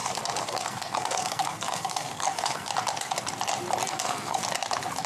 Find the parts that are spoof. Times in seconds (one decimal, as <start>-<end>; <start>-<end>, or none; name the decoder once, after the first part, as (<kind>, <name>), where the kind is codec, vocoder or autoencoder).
0.0-2.7 (codec, SNAC); 3.9-4.4